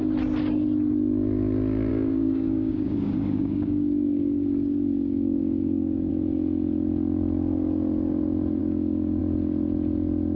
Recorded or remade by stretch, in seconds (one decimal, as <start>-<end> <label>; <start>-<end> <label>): 0.0-1.9 recorded; 1.9-6.1 remade; 6.1-8.6 recorded; 8.6-9.2 remade; 9.2-10.4 recorded